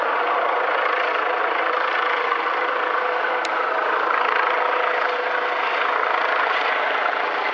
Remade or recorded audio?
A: remade